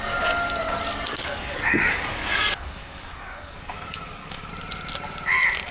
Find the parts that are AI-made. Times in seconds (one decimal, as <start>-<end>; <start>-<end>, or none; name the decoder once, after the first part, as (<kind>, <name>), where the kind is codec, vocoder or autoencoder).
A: 1.1-4.5 (codec, DAC)